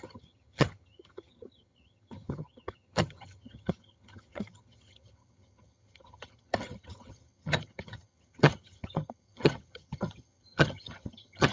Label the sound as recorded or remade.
remade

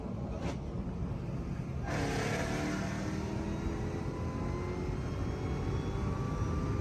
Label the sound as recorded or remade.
recorded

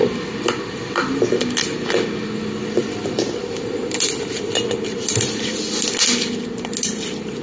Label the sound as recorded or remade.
recorded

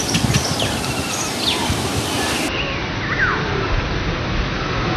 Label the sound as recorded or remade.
recorded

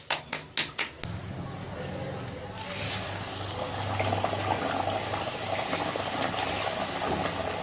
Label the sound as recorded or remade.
recorded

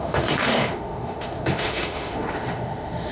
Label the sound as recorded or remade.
remade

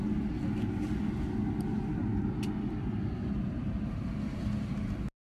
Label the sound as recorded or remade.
recorded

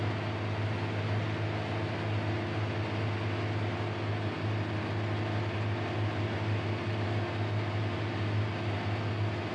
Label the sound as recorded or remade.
recorded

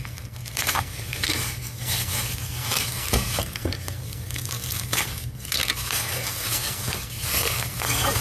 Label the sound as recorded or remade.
remade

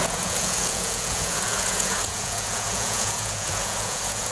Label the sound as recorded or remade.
remade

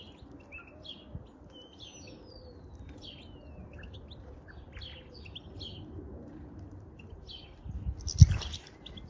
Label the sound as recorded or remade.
recorded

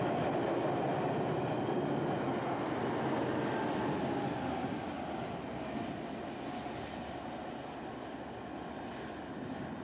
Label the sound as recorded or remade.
recorded